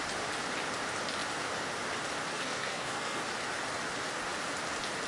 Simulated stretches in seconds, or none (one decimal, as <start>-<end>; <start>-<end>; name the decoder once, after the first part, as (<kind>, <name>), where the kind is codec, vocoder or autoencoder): 2.3-3.2 (codec, SNAC)